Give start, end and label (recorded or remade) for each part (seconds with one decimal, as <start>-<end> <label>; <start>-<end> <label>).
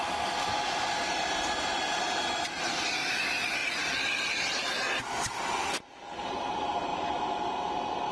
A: 0.0-8.1 recorded